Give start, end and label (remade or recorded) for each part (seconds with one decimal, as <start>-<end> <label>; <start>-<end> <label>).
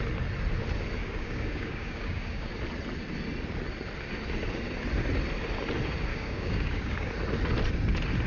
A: 0.0-1.0 recorded; 1.0-2.5 remade; 2.5-6.1 recorded; 6.1-7.1 remade; 7.1-8.3 recorded